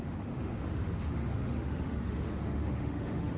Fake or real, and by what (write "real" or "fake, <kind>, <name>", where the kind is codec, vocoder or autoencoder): fake, autoencoder, DAC-VAE